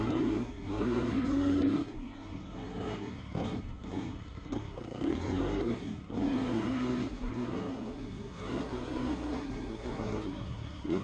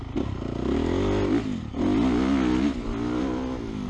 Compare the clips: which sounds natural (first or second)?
second